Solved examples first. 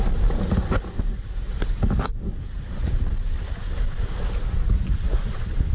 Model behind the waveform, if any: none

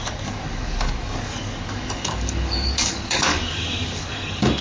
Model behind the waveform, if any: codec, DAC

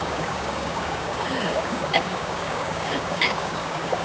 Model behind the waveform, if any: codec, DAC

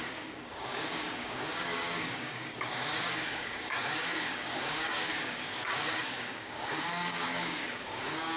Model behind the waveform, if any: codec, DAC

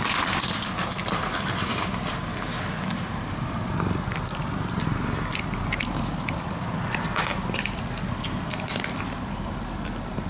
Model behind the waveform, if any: none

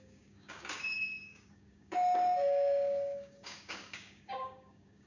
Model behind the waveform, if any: codec, DAC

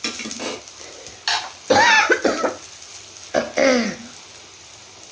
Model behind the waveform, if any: none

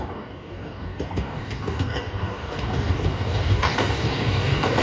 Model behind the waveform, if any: codec, DAC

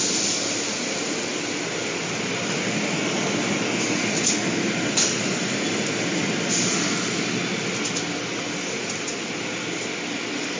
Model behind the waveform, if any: none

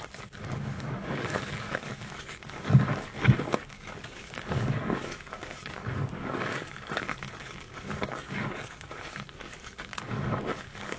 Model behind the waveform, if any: codec, DAC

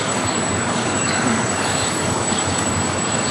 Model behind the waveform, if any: codec, DAC